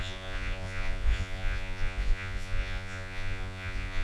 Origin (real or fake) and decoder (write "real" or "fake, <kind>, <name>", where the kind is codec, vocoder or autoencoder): fake, vocoder, Vocos